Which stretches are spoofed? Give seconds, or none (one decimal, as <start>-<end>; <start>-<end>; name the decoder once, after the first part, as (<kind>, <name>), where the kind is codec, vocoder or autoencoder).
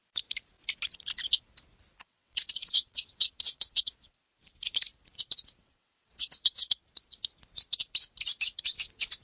2.0-4.1 (vocoder, WaveNeXt); 5.6-6.8